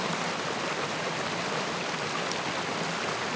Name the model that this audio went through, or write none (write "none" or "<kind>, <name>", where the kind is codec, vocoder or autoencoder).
none